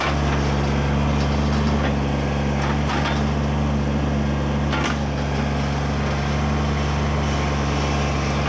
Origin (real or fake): real